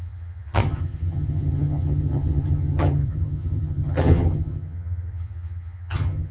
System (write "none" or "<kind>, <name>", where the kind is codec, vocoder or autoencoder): vocoder, HiFi-GAN